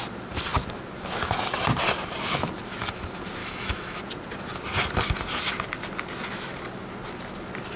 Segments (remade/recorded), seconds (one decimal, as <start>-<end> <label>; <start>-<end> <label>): 0.0-3.4 recorded; 3.4-4.0 remade; 4.0-7.8 recorded

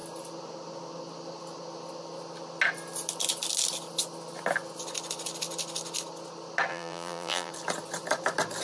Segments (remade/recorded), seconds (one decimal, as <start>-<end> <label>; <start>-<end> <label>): 0.0-6.7 recorded; 6.7-7.5 remade; 7.5-8.6 recorded

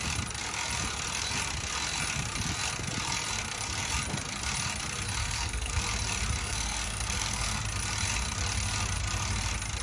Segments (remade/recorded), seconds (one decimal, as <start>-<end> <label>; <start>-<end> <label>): 0.0-5.2 recorded; 5.2-5.8 remade; 5.8-6.4 recorded; 6.4-7.6 remade; 7.6-9.8 recorded

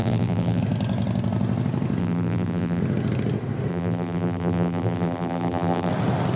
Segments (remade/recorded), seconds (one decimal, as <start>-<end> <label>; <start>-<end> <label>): 0.0-0.6 remade; 0.6-2.0 recorded; 2.0-2.8 remade; 2.8-3.7 recorded; 3.7-5.9 remade; 5.9-6.4 recorded